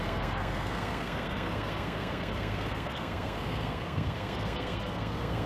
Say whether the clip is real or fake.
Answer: fake